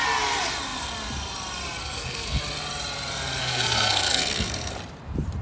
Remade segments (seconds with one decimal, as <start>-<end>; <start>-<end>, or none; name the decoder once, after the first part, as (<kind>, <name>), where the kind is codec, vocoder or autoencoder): 1.8-2.4 (codec, SNAC); 3.4-4.7